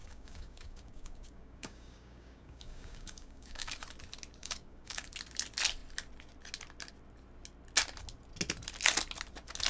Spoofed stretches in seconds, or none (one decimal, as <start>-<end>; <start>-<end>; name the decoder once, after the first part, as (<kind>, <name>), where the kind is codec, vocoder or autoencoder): 0.0-3.7 (codec, DAC); 4.4-5.1